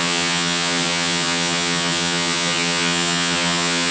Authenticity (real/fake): fake